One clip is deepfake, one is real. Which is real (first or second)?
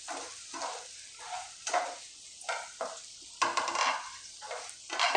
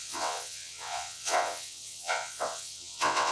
first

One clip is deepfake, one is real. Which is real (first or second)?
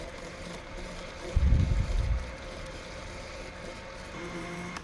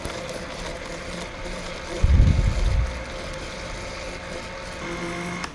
second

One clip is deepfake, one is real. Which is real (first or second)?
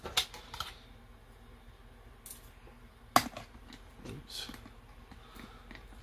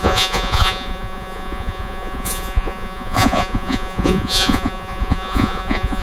first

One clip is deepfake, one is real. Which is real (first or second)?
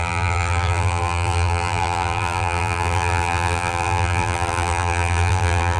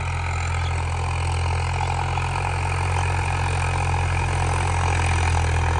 second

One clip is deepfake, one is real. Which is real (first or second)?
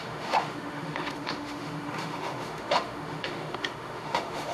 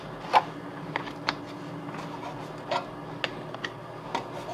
second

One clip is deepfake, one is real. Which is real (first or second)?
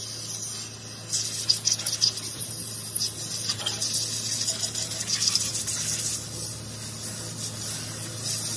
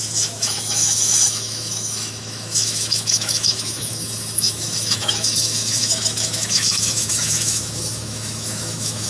first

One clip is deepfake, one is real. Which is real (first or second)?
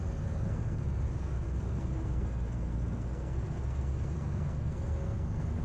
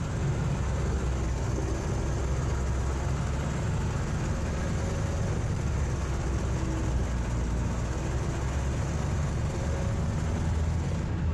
second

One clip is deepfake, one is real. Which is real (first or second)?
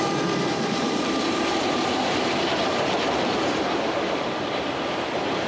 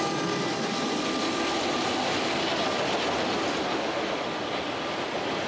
second